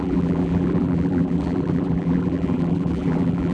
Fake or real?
fake